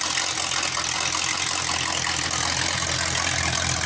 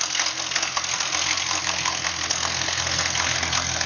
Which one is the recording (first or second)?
first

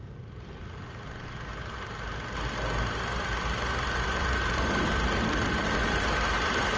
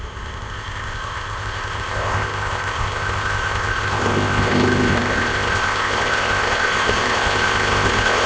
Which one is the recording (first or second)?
first